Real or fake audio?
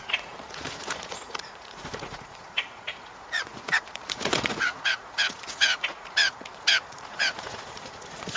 fake